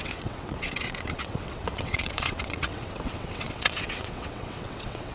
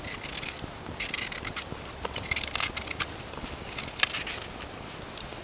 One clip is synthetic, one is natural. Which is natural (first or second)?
second